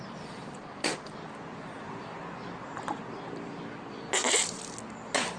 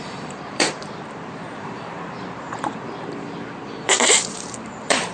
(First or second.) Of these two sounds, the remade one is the second